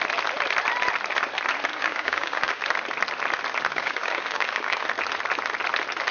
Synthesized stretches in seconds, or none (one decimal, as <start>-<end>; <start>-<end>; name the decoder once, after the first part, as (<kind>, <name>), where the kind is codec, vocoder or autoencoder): 1.7-2.6 (codec, DAC); 3.7-4.8